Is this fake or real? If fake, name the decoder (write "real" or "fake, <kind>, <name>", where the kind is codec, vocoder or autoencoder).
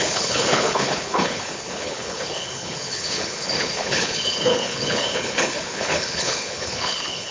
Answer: fake, codec, HILCodec